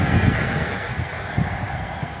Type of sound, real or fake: fake